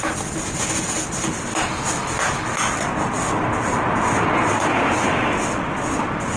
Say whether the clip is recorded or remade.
recorded